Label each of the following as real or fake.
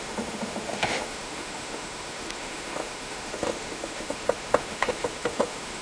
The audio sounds fake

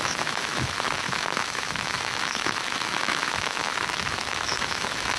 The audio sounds fake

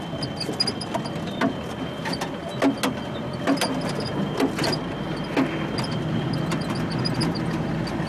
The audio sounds real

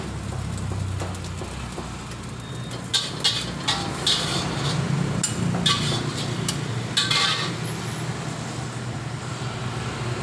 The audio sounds real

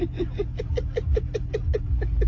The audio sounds real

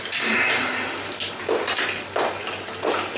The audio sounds real